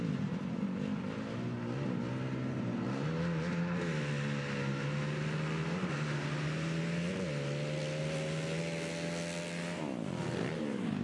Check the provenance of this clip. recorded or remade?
recorded